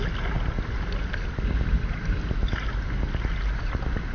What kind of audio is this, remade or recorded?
recorded